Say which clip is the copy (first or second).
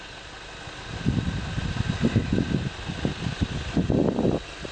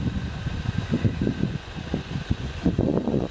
second